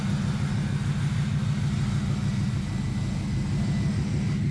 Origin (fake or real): real